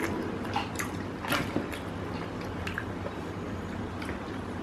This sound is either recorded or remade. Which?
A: recorded